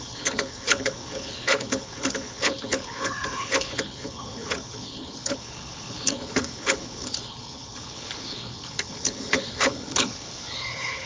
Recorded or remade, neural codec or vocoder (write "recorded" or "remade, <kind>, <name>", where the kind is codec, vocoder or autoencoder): remade, codec, HILCodec